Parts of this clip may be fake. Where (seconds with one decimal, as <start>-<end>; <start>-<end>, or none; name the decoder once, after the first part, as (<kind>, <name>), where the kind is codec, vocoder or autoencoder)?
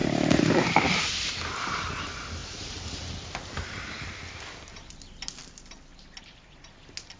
0.0-1.1 (vocoder, BigVGAN v2); 2.4-3.1